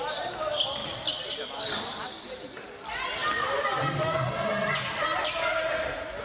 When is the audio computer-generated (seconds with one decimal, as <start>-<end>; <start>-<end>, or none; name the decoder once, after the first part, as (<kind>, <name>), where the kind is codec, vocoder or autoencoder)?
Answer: 0.8-2.3 (vocoder, BigVGAN v2)